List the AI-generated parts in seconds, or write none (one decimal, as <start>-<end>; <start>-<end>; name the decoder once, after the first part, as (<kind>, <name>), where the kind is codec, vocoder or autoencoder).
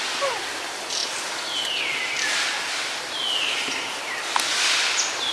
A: none